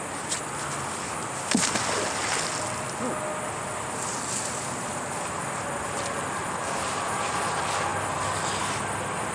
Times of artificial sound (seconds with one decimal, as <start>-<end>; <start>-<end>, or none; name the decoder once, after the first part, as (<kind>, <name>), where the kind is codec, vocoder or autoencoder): none